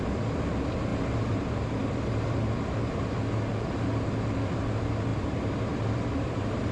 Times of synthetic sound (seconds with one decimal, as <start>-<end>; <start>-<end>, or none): 0.9-1.4; 5.1-6.7